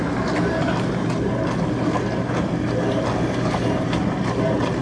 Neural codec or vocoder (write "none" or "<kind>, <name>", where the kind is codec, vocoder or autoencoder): none